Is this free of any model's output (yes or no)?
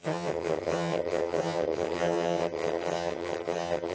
no